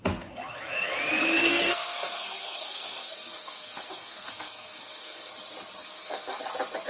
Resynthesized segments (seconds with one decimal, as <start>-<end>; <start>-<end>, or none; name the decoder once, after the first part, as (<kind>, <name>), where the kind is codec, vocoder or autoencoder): 1.2-5.3 (codec, SNAC); 5.8-6.4